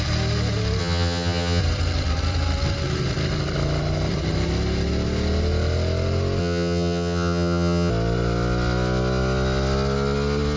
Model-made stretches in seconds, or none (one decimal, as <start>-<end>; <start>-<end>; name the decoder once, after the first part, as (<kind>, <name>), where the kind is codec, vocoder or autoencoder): 0.8-1.6 (vocoder, HiFi-GAN); 6.4-7.9